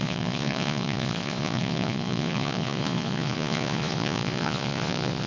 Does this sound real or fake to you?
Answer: fake